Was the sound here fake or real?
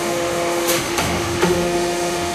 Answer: fake